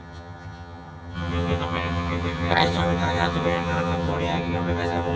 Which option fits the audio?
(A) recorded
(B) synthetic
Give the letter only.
B